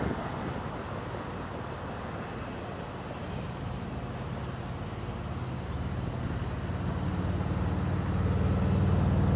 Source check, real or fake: real